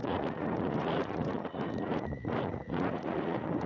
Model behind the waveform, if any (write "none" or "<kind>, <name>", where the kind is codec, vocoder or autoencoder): vocoder, Vocos